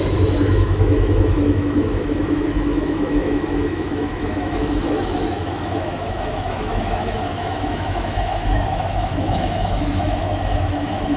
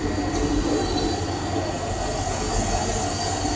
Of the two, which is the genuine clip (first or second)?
second